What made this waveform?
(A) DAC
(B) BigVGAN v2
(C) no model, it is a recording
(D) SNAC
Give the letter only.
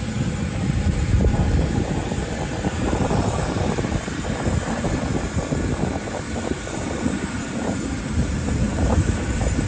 B